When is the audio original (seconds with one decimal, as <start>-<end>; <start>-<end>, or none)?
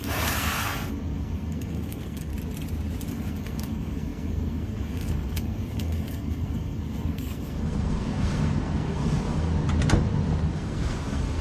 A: 2.3-3.1; 9.5-10.5